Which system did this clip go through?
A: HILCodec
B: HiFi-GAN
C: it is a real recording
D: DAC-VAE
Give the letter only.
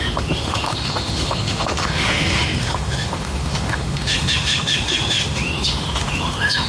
D